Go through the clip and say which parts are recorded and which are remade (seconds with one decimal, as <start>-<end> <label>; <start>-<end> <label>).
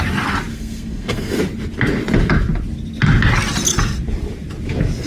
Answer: 0.0-0.5 recorded; 0.5-1.4 remade; 1.4-5.1 recorded